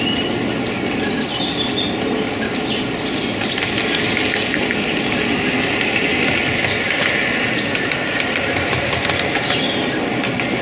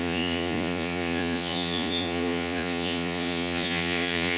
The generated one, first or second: second